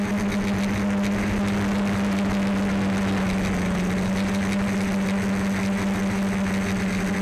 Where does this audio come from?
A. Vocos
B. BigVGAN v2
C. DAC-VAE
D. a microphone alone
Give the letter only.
D